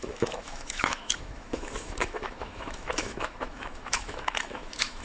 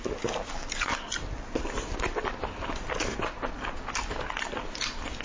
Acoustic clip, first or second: second